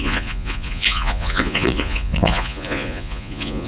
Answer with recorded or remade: remade